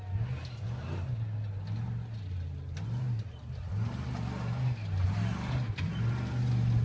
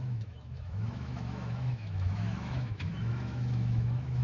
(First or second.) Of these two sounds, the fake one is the second